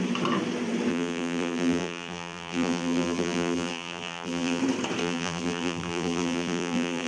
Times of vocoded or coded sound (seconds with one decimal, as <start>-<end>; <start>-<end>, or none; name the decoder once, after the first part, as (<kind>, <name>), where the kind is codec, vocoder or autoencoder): 0.9-4.6 (vocoder, BigVGAN v2); 5.0-7.1